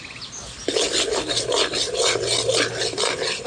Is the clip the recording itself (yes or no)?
yes